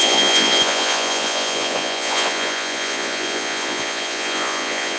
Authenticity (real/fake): fake